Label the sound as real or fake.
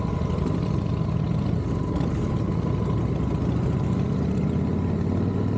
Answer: real